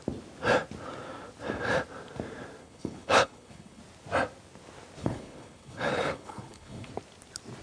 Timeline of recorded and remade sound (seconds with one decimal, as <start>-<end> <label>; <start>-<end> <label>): 0.0-2.6 recorded; 2.6-3.8 remade; 3.8-5.0 recorded; 5.0-6.9 remade; 6.9-7.6 recorded